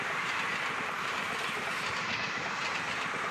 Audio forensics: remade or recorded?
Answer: recorded